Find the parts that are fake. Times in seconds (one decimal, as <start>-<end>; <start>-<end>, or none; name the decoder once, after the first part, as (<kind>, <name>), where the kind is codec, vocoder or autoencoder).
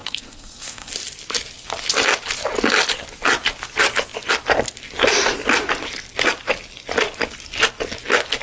0.0-0.9 (codec, SNAC)